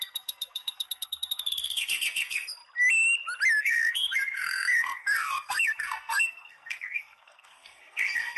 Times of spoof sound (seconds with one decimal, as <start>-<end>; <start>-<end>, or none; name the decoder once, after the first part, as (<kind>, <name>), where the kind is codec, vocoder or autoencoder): 0.0-2.6 (codec, SNAC); 3.6-8.4